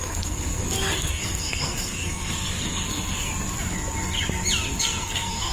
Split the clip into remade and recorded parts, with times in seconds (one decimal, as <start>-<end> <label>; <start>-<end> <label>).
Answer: 0.0-3.3 remade; 3.3-4.8 recorded; 4.8-5.5 remade